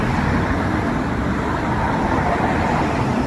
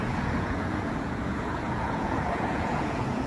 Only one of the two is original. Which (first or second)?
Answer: first